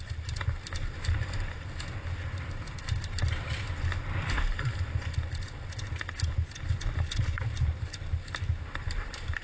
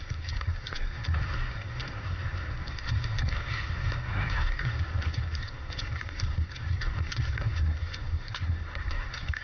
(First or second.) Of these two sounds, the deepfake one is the second